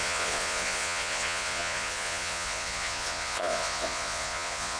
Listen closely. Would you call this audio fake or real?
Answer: fake